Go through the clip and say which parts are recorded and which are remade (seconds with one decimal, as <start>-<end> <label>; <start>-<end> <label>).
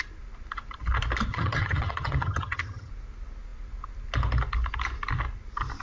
0.0-1.3 recorded; 1.3-2.9 remade; 2.9-5.8 recorded